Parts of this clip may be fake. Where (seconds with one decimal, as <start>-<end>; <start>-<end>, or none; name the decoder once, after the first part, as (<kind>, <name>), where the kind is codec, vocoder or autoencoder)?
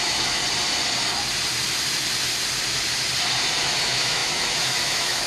0.0-0.4 (autoencoder, DAC-VAE); 3.6-5.3